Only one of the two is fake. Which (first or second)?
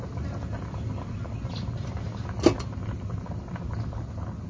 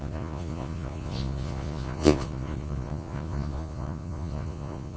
second